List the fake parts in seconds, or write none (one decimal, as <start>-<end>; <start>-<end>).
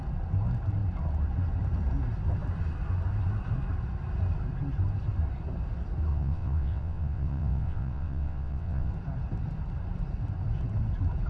6.1-8.9